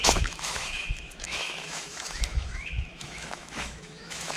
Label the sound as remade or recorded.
remade